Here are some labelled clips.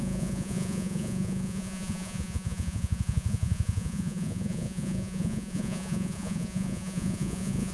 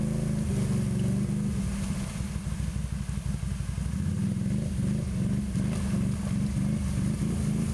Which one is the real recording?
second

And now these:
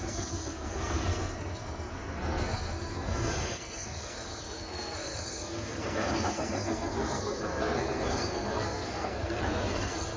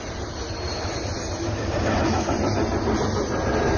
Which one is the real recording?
second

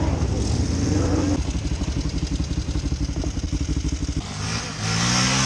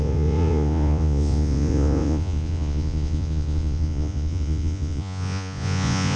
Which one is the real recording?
first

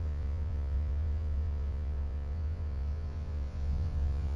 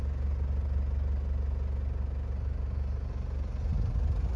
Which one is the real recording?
second